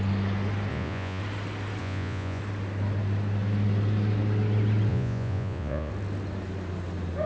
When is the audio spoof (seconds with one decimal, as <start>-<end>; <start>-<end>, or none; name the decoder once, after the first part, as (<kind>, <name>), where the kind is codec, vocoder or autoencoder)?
0.7-1.2 (vocoder, Vocos); 1.8-2.4; 4.9-5.9